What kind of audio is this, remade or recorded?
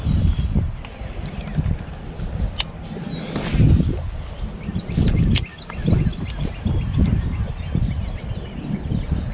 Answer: recorded